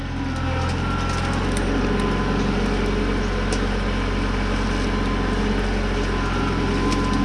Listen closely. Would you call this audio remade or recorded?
recorded